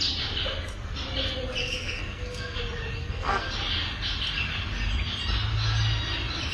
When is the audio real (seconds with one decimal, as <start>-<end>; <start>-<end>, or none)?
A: 0.0-1.6; 2.6-3.0; 3.5-6.5